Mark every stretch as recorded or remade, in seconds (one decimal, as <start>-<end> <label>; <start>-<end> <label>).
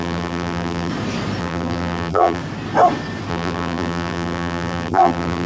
0.0-0.9 remade; 0.9-1.4 recorded; 1.4-2.4 remade; 2.4-3.3 recorded; 3.3-5.5 remade